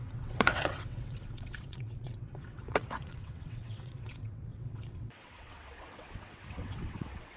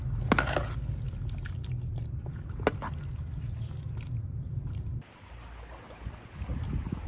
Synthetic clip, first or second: first